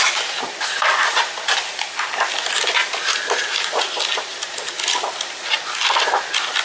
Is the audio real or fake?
real